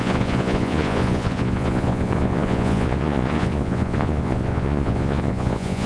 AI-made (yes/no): yes